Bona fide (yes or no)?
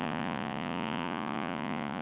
no